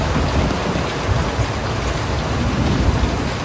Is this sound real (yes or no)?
yes